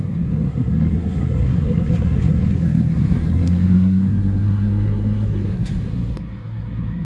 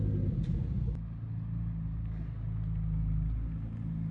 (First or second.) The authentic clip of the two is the second